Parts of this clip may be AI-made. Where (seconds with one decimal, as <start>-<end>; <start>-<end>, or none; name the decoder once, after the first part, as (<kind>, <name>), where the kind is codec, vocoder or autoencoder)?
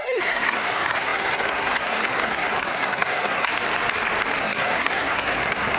0.0-3.5 (codec, SNAC); 4.4-5.8